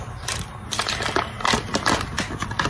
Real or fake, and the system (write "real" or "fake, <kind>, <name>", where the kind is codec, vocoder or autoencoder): real